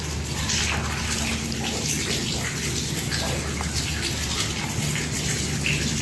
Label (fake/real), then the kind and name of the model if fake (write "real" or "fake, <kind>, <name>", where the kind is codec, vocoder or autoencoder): real